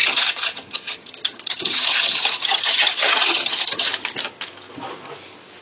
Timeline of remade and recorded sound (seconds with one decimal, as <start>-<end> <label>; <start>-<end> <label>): 0.0-3.9 remade; 3.9-5.6 recorded